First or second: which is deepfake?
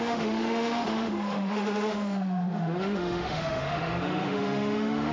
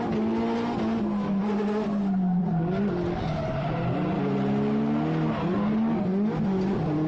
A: first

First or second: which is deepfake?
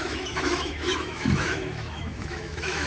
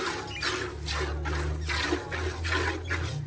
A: first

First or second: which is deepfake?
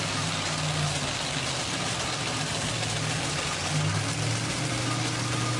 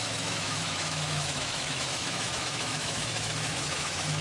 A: second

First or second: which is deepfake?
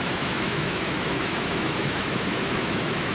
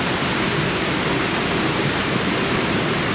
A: first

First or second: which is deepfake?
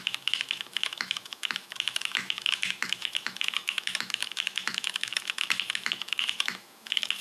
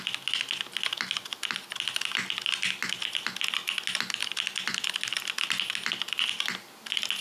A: first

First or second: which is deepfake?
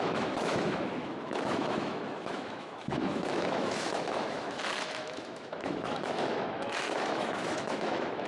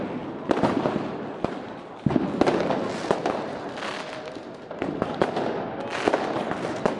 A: first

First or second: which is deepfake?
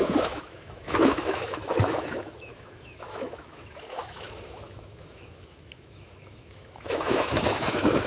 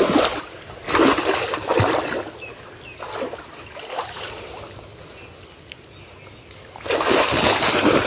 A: first